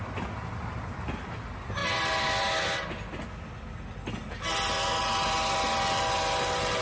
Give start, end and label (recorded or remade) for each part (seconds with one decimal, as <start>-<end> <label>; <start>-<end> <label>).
0.0-6.8 recorded